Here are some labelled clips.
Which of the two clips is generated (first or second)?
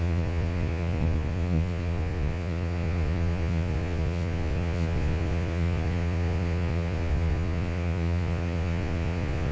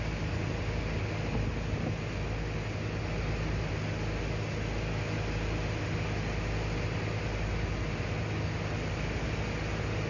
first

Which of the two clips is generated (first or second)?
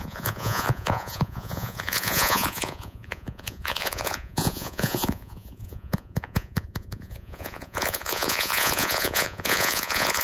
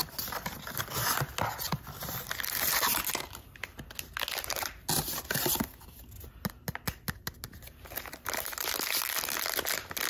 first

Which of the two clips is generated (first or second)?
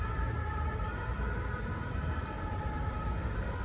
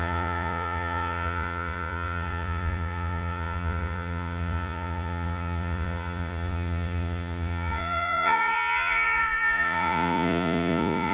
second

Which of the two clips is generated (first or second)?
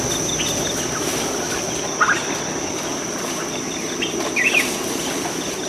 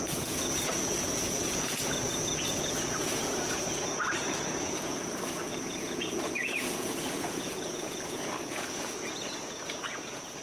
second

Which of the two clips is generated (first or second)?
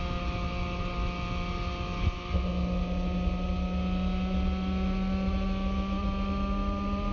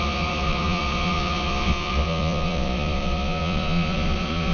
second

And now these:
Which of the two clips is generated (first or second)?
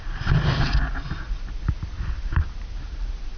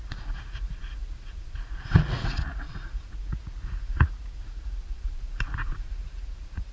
second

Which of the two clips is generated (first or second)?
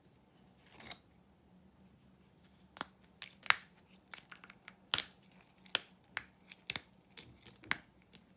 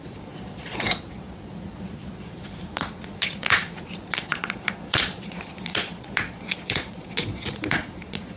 second